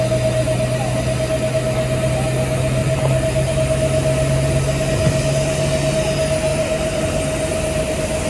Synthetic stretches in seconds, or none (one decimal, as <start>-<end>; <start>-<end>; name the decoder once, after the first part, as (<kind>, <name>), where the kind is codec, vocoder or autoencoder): 2.8-3.5 (vocoder, BigVGAN v2); 6.5-7.0